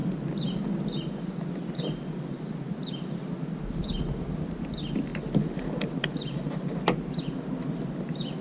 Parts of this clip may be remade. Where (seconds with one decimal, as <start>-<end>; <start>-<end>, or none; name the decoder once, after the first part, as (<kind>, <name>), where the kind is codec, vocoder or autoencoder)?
none